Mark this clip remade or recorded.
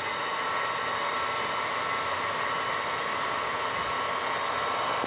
recorded